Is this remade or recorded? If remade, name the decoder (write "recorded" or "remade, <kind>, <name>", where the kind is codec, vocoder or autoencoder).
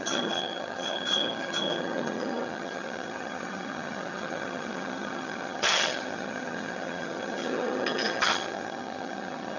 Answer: remade, vocoder, HiFi-GAN